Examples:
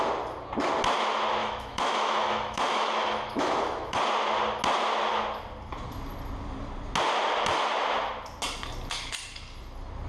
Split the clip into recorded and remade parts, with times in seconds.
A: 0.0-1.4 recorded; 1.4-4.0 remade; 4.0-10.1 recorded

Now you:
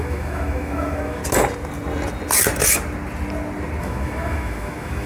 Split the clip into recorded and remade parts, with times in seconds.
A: 0.0-1.2 remade; 1.2-3.8 recorded; 3.8-5.1 remade

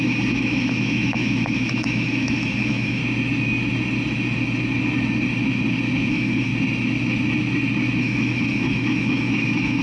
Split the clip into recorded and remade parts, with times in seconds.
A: 0.0-3.0 remade; 3.0-6.1 recorded; 6.1-6.5 remade; 6.5-8.0 recorded; 8.0-9.8 remade

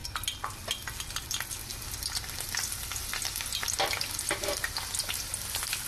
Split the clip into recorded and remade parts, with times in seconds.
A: 0.0-5.9 recorded

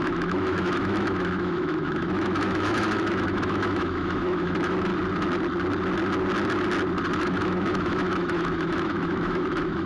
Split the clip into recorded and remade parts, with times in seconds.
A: 0.0-4.9 remade; 4.9-7.1 recorded; 7.1-9.9 remade

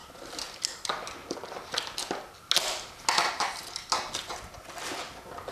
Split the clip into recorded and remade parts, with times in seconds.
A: 0.0-5.5 recorded

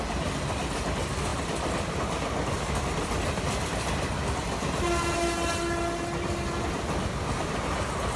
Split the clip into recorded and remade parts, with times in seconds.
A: 0.0-8.2 recorded